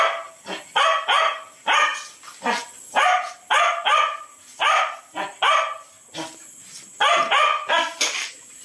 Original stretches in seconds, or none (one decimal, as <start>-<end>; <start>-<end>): 0.0-4.5; 5.0-8.6